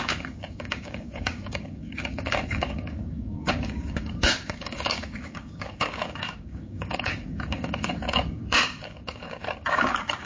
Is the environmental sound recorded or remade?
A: remade